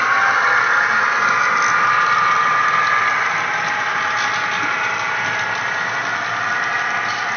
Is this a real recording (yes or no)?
yes